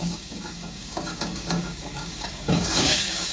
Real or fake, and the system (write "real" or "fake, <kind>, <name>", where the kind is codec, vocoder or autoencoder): fake, codec, DAC